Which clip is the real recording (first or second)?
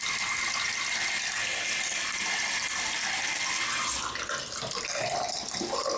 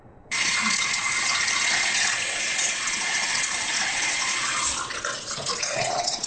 first